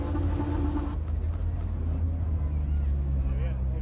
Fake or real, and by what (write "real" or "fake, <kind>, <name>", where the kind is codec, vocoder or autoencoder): real